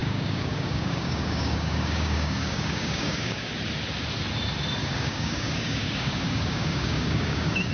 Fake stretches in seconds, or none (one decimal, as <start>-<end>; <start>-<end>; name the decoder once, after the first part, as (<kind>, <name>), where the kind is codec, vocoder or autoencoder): 0.0-3.5 (codec, DAC); 4.8-7.7